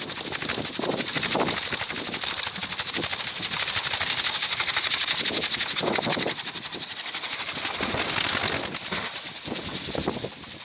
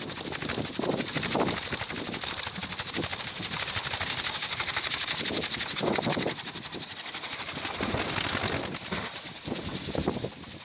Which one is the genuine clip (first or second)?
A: first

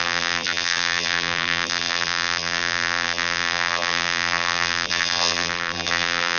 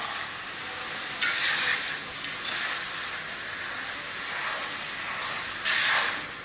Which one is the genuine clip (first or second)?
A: second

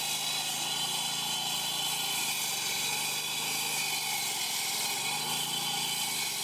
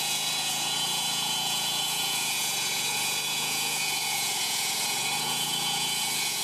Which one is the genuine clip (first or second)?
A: first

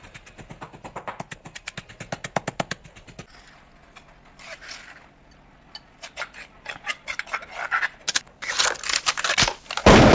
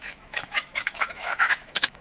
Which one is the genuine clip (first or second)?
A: first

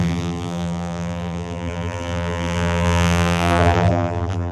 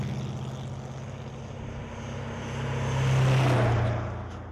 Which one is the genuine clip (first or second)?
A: second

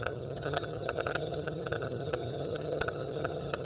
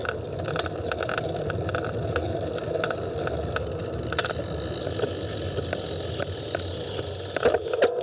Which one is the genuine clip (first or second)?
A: second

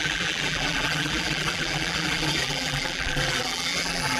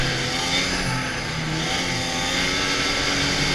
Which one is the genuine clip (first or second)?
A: second